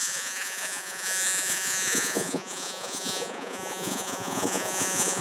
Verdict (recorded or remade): remade